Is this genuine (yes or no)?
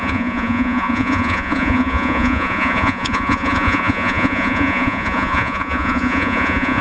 no